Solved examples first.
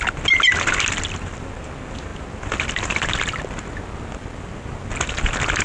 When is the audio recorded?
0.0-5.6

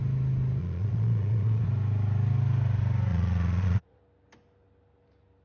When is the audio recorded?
0.0-0.6; 1.6-3.1; 4.0-5.4

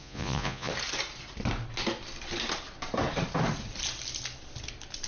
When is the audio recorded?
0.7-5.1